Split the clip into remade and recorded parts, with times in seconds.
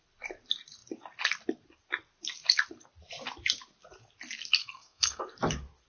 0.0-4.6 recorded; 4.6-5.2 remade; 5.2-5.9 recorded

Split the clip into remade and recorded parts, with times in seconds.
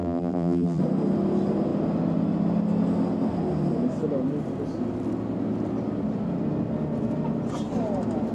0.0-0.8 remade; 0.8-8.3 recorded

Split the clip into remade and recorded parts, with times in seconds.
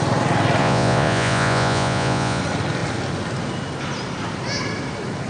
0.0-0.6 recorded; 0.6-2.4 remade; 2.4-5.3 recorded